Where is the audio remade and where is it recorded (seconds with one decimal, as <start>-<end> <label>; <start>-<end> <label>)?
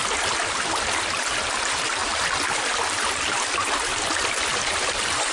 0.0-5.3 recorded